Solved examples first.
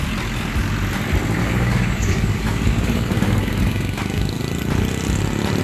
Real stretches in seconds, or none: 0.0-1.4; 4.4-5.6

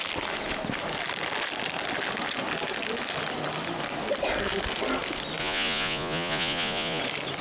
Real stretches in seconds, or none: 0.0-5.4; 7.0-7.4

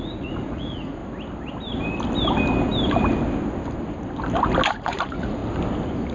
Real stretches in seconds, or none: 1.0-4.7; 5.4-6.1

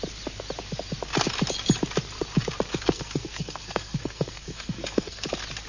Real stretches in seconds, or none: 0.0-2.7; 5.3-5.7

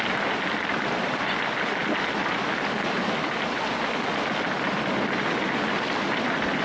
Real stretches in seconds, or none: 0.0-6.6

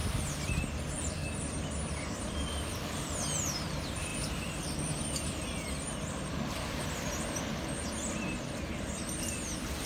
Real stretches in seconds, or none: 0.0-0.6; 1.2-1.9; 4.1-8.1

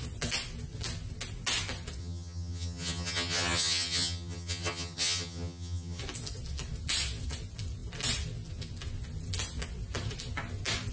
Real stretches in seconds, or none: 0.0-2.0; 6.0-10.9

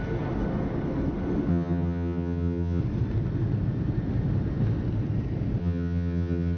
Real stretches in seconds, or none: 0.0-1.5; 2.8-5.6